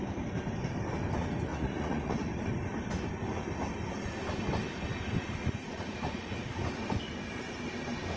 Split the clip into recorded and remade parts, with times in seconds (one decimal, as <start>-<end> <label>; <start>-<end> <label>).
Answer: 0.0-1.5 recorded; 1.5-2.4 remade; 2.4-5.4 recorded; 5.4-6.6 remade; 6.6-8.2 recorded